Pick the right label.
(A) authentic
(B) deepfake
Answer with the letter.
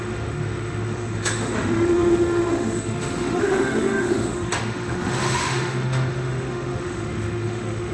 B